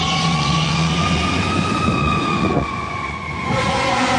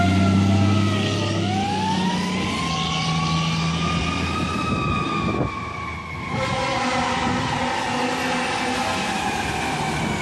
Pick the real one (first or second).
second